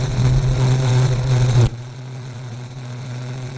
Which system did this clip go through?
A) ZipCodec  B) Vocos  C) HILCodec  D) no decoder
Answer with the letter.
B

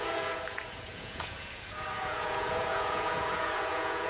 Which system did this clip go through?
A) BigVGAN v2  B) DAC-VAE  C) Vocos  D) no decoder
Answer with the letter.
C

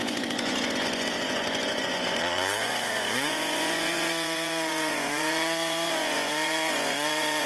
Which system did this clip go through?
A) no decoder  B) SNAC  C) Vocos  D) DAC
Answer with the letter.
C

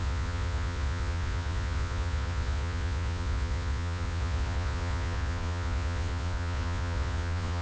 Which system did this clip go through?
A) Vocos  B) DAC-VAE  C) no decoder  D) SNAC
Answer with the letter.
A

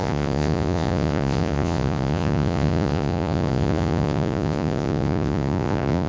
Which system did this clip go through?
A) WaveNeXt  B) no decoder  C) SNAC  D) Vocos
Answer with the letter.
D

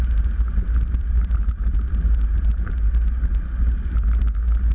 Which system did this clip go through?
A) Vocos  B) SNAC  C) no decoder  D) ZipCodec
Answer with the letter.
C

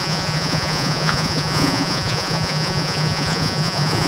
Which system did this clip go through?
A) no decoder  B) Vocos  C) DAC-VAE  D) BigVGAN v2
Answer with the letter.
B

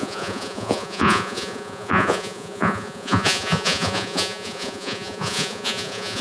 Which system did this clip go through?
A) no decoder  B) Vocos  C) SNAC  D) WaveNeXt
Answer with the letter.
B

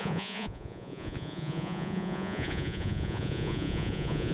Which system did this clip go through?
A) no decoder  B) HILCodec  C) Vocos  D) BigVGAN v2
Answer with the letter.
C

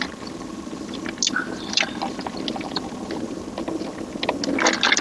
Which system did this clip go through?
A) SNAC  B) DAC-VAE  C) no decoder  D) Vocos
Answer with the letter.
C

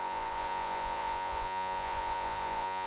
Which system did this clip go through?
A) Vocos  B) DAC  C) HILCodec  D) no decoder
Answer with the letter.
A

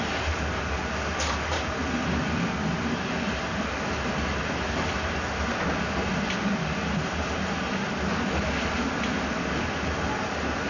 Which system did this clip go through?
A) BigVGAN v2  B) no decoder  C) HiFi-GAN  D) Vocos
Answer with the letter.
B